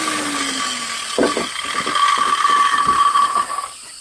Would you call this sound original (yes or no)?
yes